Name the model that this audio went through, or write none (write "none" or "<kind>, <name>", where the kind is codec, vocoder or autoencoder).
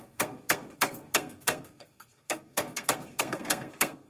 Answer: codec, SNAC